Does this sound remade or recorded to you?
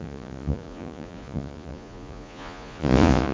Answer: remade